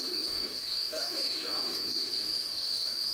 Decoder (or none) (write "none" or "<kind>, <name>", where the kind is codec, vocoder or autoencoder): codec, DAC